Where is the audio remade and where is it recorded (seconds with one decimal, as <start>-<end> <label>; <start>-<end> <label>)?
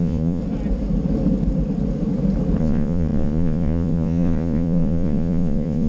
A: 0.0-0.4 remade; 0.4-2.6 recorded; 2.6-5.9 remade